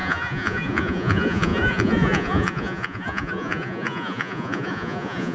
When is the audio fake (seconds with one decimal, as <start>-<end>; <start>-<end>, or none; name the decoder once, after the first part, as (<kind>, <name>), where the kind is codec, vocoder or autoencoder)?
0.0-5.3 (vocoder, Vocos)